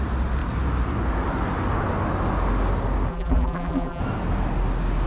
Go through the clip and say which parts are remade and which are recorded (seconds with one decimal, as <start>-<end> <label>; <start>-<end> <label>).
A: 0.0-3.1 recorded; 3.1-4.0 remade; 4.0-5.1 recorded